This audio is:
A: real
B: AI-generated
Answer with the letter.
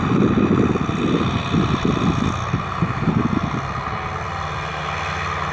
A